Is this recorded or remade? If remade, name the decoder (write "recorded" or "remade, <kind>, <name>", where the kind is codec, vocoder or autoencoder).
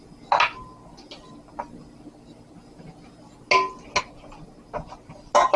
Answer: recorded